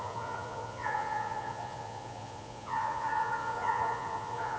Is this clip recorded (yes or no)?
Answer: no